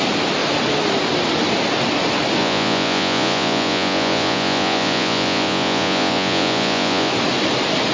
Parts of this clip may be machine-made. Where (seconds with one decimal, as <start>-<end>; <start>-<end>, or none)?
2.4-7.1